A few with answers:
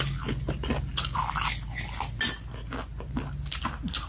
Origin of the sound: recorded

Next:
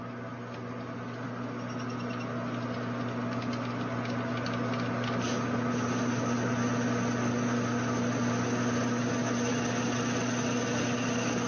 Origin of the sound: recorded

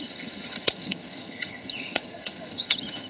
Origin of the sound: remade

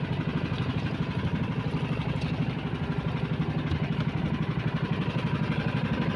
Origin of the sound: recorded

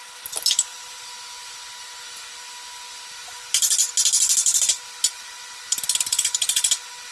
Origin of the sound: recorded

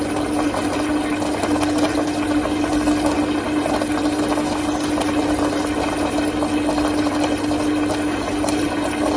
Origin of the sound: recorded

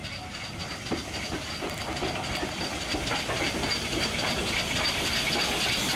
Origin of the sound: recorded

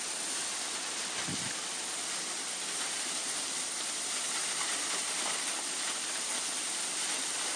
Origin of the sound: recorded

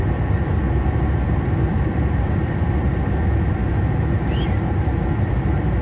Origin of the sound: recorded